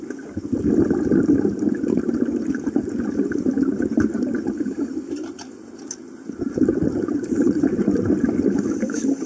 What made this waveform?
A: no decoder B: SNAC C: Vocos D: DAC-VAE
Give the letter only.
A